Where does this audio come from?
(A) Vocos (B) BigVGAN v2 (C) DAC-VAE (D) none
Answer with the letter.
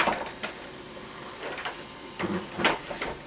D